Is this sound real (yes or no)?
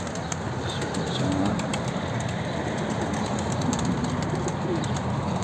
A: yes